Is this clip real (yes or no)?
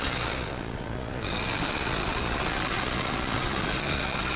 no